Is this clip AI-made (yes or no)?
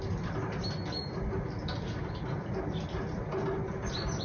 no